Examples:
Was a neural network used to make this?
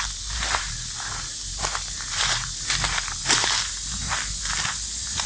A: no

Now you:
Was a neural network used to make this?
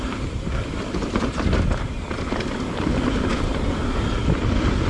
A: no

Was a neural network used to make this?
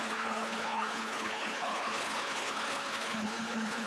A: yes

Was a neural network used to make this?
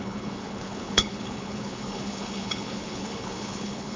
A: yes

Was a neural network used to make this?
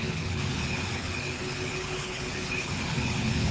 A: yes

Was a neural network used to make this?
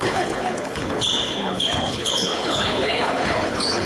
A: yes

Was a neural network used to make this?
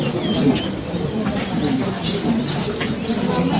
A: no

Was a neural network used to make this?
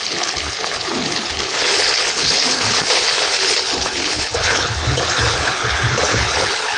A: yes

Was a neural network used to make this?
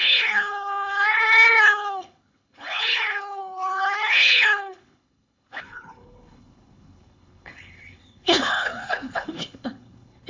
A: yes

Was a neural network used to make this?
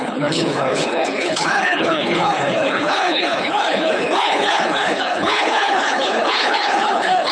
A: yes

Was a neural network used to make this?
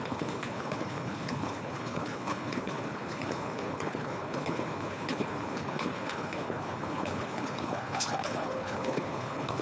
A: yes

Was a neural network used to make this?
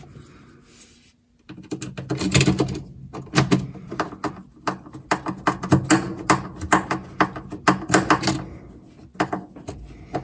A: no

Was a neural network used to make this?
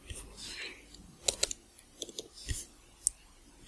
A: no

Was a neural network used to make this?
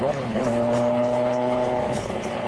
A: yes